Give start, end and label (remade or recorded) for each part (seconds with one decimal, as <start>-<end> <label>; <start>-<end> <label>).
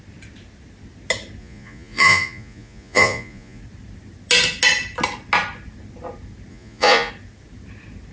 0.0-1.4 recorded; 1.4-3.6 remade; 3.6-6.5 recorded; 6.5-7.1 remade; 7.1-8.1 recorded